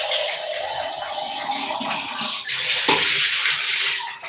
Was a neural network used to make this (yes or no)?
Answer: no